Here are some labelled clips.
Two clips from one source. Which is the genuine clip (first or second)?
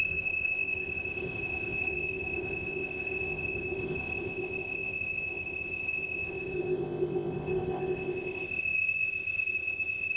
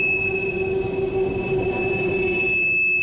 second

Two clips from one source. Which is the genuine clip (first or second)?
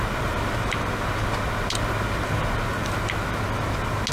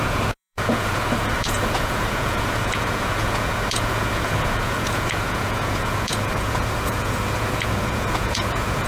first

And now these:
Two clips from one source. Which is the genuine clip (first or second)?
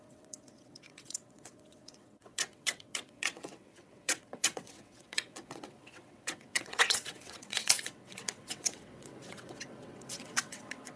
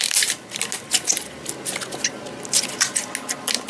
second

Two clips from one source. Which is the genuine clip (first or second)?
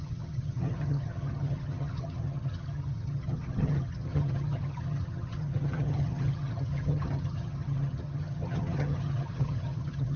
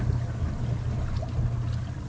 second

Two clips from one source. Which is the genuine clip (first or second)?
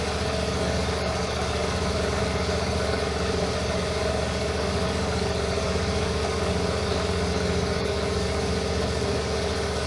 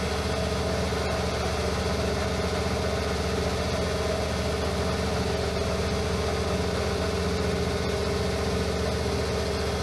second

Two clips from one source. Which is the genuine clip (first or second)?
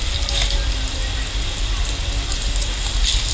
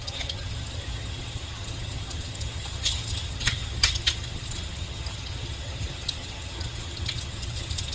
first